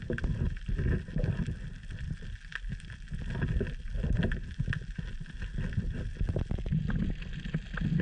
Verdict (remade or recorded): recorded